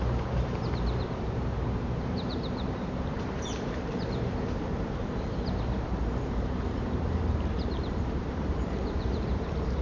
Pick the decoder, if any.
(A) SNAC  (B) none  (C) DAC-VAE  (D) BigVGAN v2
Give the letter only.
D